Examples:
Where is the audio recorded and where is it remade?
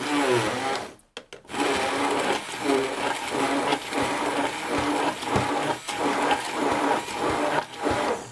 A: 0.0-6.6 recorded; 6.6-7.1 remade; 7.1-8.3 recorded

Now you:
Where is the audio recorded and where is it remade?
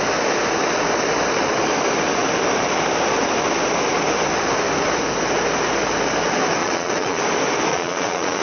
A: 0.0-6.6 recorded; 6.6-7.2 remade; 7.2-7.7 recorded; 7.7-8.4 remade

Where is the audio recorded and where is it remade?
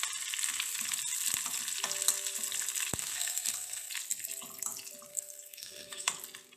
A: 0.0-3.0 recorded; 3.0-3.9 remade; 3.9-5.1 recorded; 5.1-6.1 remade; 6.1-6.6 recorded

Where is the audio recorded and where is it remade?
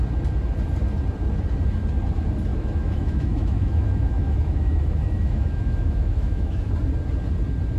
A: 0.0-2.5 recorded; 2.5-6.7 remade; 6.7-7.8 recorded